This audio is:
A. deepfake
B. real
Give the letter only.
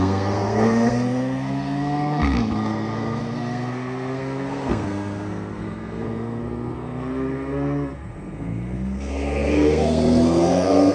A